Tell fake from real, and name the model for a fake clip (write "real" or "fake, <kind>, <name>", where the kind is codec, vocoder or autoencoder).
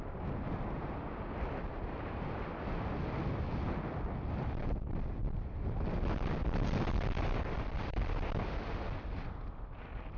real